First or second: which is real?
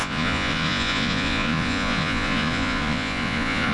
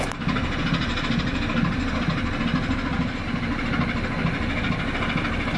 second